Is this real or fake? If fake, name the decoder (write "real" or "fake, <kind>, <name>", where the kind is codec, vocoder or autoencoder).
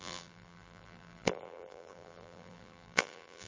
fake, vocoder, BigVGAN v2